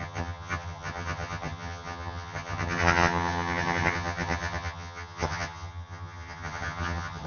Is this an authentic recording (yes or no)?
no